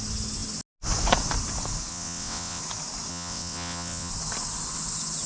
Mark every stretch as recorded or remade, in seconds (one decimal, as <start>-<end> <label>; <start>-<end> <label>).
0.0-1.9 recorded; 1.9-2.6 remade; 2.6-3.1 recorded; 3.1-4.1 remade; 4.1-5.3 recorded